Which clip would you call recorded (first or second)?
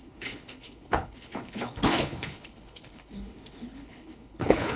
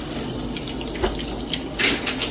second